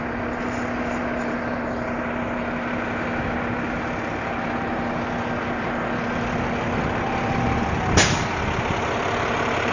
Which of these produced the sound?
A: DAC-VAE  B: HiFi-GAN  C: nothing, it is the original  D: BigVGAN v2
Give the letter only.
C